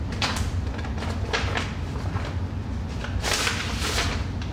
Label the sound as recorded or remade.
recorded